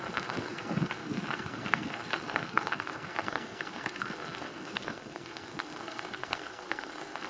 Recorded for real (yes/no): no